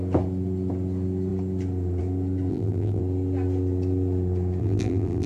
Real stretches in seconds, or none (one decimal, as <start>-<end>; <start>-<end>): 0.0-2.5; 3.0-4.6